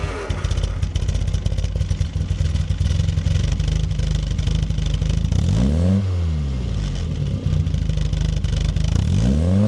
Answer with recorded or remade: recorded